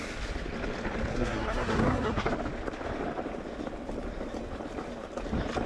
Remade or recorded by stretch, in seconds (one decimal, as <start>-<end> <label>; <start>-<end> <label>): 0.0-1.1 recorded; 1.1-2.3 remade; 2.3-5.7 recorded

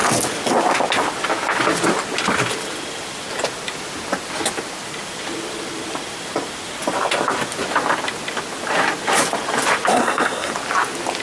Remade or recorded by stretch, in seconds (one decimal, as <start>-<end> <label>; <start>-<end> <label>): 0.0-9.9 recorded; 9.9-10.5 remade; 10.5-11.2 recorded

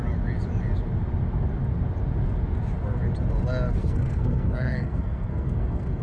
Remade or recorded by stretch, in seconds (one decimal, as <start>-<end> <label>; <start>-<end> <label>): 0.0-3.8 recorded; 3.8-6.0 remade